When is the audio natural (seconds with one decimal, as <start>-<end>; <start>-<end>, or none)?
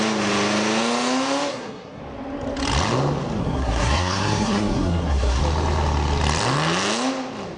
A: 0.0-1.5; 2.0-3.4; 5.4-7.6